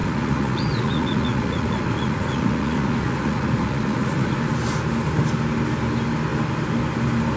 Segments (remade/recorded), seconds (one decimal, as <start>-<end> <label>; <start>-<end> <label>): 0.0-4.4 remade; 4.4-7.4 recorded